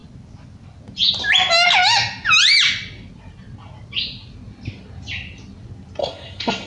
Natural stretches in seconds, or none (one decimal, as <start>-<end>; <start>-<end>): 0.0-6.0